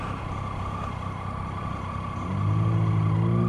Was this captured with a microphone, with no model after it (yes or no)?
yes